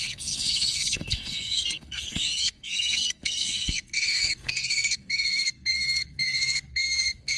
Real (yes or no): no